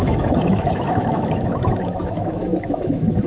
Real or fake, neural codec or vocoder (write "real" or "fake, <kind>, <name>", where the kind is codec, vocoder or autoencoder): fake, autoencoder, DAC-VAE